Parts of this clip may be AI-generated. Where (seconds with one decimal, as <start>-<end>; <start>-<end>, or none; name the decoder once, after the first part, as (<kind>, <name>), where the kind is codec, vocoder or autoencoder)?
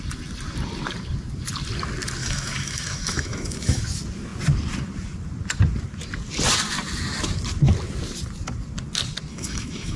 2.2-3.8 (autoencoder, DAC-VAE); 9.3-10.0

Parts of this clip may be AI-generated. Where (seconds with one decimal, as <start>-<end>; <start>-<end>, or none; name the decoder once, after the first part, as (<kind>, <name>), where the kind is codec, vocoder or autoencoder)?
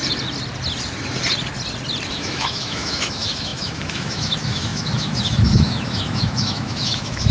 2.1-7.3 (autoencoder, DAC-VAE)